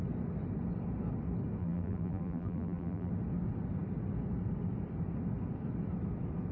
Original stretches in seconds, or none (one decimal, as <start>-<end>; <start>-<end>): 0.0-1.6; 3.1-6.5